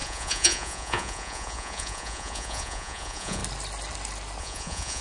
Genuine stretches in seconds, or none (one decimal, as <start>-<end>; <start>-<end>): 3.4-4.4